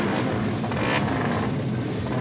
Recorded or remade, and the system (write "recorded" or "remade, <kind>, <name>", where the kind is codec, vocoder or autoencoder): recorded